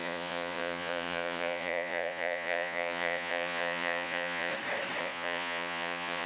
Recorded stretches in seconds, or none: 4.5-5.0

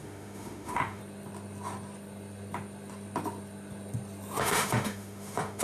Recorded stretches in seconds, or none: 1.0-4.4

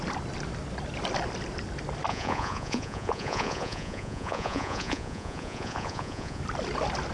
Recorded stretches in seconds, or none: 0.0-2.1; 6.4-7.1

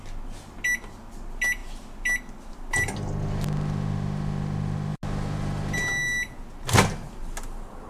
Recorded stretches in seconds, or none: 0.0-7.9

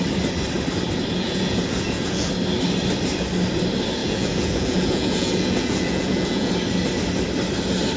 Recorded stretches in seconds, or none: 0.0-1.1; 2.3-4.0; 6.5-8.0

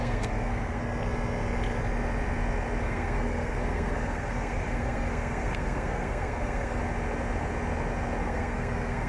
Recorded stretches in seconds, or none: 0.8-2.8; 6.8-8.2